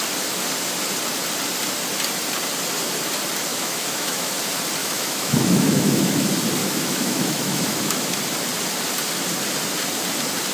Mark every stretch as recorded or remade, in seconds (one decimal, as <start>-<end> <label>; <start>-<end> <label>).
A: 0.0-3.5 recorded; 3.5-4.3 remade; 4.3-4.8 recorded; 4.8-6.1 remade; 6.1-6.6 recorded; 6.6-8.2 remade; 8.2-10.5 recorded